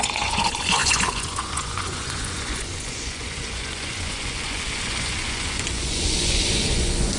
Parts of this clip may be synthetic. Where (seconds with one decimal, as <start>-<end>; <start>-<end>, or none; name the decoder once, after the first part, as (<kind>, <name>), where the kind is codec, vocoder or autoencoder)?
0.0-7.2 (vocoder, Vocos)